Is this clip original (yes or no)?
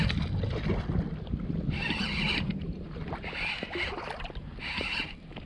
yes